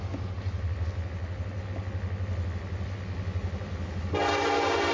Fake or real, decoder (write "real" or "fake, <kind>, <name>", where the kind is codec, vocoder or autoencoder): real